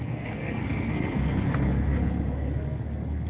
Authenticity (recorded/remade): remade